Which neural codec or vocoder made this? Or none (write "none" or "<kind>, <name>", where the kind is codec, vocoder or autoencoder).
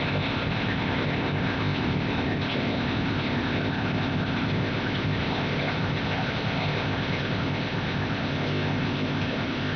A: codec, ZipCodec